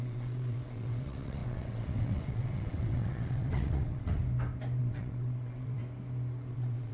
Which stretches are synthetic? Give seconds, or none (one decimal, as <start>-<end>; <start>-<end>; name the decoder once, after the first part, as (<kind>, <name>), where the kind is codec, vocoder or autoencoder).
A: 0.0-4.2 (vocoder, WaveNeXt); 4.8-5.8; 6.5-6.9